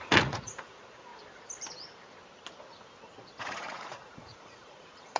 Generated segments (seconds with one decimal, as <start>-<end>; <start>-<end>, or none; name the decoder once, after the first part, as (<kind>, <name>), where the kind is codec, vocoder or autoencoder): 0.0-1.1 (vocoder, Vocos); 3.4-5.2